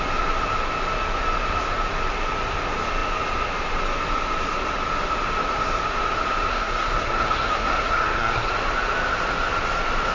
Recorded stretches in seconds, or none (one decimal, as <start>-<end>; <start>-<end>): 0.0-6.5; 8.5-10.1

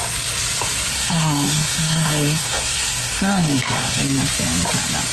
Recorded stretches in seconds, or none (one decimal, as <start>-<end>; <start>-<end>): 0.0-0.9; 4.0-5.1

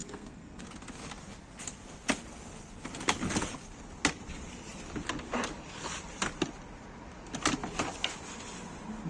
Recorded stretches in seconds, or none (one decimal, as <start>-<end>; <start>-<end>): 0.6-9.1

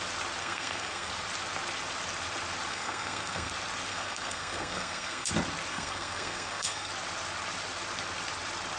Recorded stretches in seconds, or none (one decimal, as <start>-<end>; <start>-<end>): 0.0-0.4; 1.1-2.7; 3.5-3.9; 5.3-5.7; 6.9-8.8